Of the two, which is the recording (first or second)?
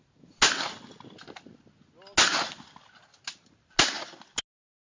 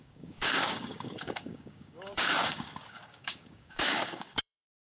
first